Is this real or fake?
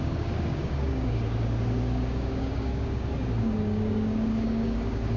fake